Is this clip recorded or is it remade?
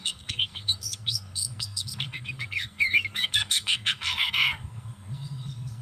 remade